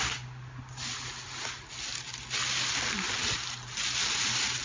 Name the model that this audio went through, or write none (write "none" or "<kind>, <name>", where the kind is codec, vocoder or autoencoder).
none